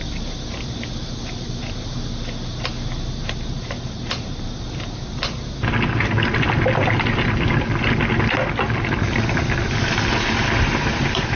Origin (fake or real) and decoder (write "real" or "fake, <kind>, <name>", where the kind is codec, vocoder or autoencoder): real